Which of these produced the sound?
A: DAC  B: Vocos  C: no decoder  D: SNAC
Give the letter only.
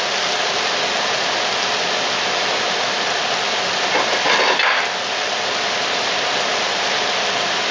C